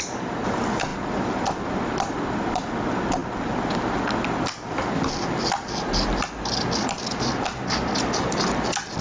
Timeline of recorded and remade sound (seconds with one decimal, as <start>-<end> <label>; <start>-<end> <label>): 0.0-9.0 recorded

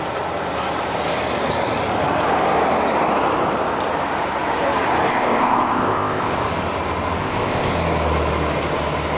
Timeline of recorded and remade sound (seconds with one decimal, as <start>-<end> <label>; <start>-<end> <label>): 0.0-5.1 recorded; 5.1-6.3 remade; 6.3-7.2 recorded; 7.2-7.7 remade; 7.7-9.2 recorded